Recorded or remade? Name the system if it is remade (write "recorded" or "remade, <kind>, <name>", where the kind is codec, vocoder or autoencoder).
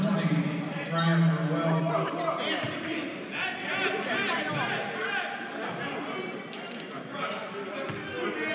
recorded